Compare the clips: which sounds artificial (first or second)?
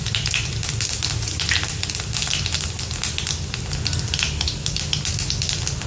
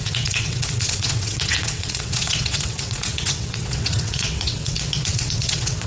second